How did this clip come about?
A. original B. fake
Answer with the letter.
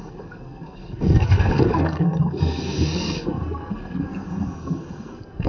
B